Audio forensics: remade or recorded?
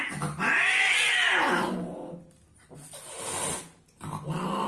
recorded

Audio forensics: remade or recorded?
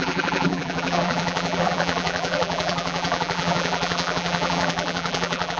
remade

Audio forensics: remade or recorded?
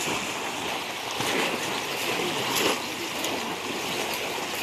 recorded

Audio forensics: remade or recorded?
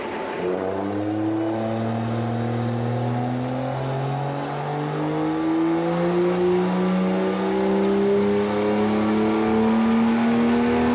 recorded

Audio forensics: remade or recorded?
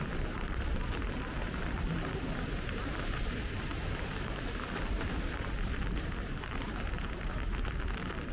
remade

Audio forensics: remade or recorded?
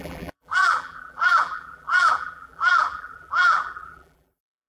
remade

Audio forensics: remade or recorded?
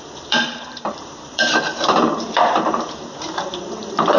remade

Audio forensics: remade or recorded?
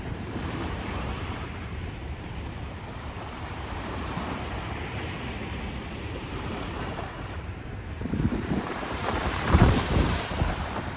remade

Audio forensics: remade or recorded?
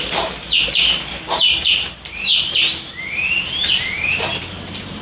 remade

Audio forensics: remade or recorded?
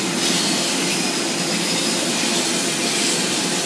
recorded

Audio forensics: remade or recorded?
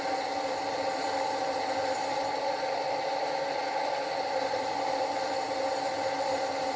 remade